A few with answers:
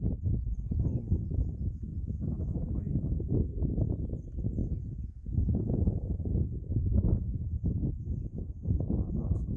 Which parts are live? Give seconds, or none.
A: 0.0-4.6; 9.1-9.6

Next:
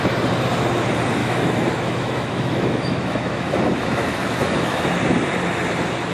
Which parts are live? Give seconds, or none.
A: 0.0-1.2; 4.9-6.1

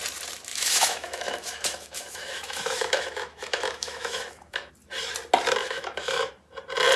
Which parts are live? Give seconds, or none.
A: 0.0-0.5; 4.7-5.6; 6.3-7.0

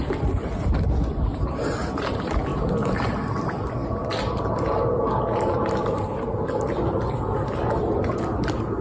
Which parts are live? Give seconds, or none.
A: 0.0-8.8

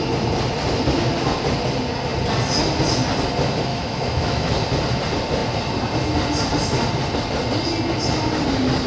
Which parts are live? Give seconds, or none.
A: 0.0-3.7; 4.5-8.9

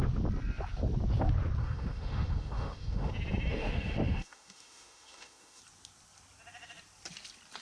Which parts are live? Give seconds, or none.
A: 0.0-1.6; 3.1-3.5; 5.6-7.6